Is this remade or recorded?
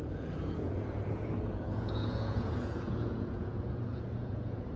remade